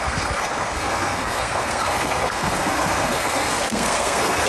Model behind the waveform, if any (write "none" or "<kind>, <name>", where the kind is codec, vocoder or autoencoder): codec, SNAC